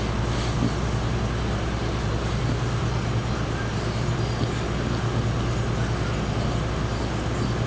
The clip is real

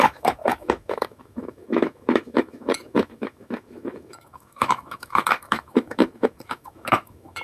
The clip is fake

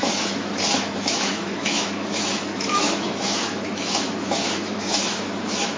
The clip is fake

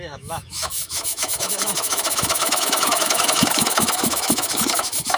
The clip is fake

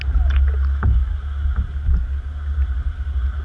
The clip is real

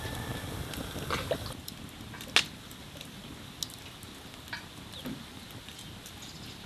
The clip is real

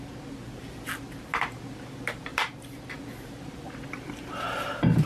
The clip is real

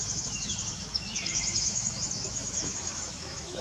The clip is fake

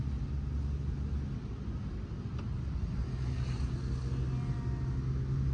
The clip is real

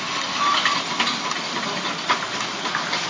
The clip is real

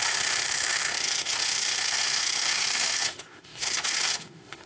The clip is fake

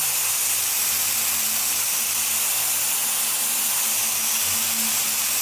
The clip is real